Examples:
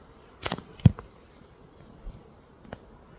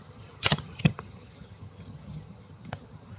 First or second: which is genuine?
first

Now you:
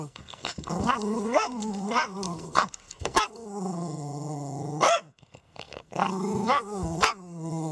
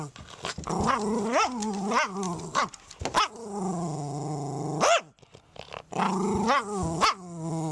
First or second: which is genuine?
second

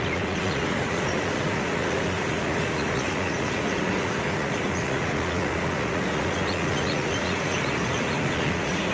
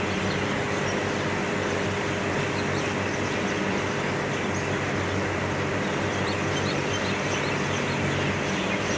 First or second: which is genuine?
second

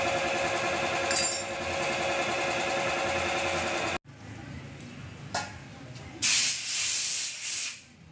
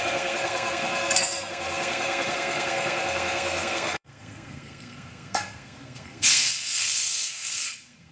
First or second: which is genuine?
first